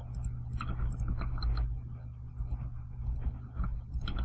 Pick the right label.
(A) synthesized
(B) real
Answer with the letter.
B